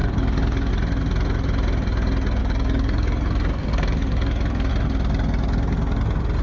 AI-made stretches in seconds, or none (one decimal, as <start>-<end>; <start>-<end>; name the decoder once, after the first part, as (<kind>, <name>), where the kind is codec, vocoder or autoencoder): 0.0-0.7 (codec, DAC); 2.4-4.7